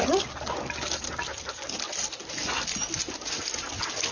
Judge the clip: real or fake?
real